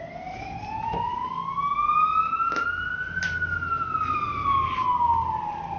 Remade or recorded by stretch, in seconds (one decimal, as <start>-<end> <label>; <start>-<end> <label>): 0.0-5.8 recorded